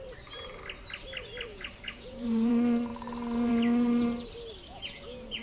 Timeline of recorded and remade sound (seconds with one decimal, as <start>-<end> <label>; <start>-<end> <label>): 0.0-1.5 recorded; 1.5-2.5 remade; 2.5-4.7 recorded; 4.7-5.4 remade